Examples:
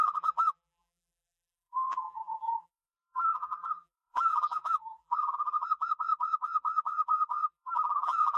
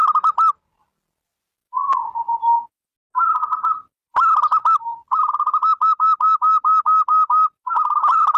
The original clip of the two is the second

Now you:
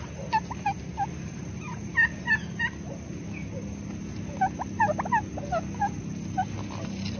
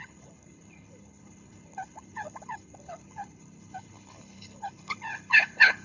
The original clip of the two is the first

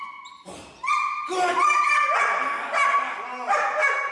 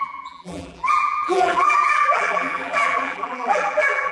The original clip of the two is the first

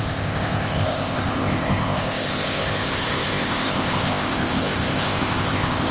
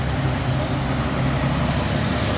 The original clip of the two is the second